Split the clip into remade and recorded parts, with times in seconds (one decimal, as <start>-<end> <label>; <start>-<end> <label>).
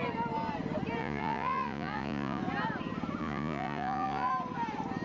0.0-1.0 recorded; 1.0-2.4 remade; 2.4-3.2 recorded; 3.2-4.3 remade; 4.3-5.0 recorded